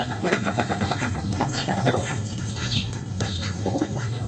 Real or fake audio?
fake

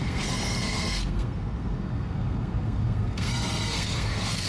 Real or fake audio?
fake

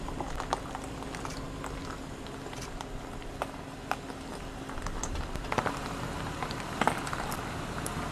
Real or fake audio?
real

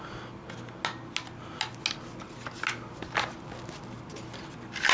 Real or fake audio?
real